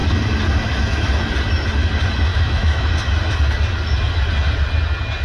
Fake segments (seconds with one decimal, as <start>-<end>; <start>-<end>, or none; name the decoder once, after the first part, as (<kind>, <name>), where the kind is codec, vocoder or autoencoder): 2.3-2.9 (autoencoder, DAC-VAE)